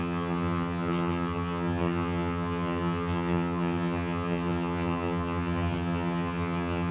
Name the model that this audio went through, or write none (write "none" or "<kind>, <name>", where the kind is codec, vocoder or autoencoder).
vocoder, HiFi-GAN